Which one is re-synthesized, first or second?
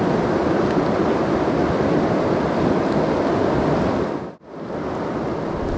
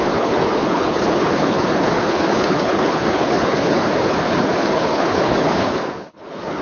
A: second